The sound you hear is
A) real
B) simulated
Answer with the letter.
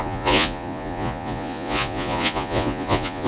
B